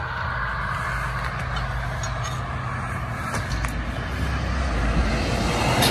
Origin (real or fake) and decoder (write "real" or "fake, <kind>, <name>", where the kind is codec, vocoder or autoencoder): real